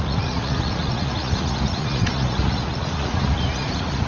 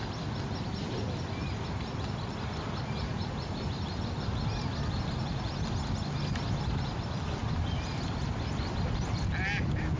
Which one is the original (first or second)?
second